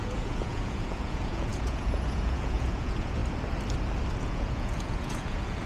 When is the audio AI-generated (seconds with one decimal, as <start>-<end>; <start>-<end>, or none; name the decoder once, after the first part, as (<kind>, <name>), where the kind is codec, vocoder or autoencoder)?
0.0-3.2 (vocoder, Vocos); 4.2-5.7